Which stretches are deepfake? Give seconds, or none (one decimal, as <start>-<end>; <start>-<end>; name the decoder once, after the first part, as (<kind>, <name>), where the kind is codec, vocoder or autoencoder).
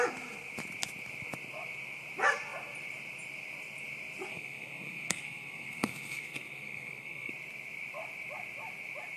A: 4.3-7.3 (codec, SNAC)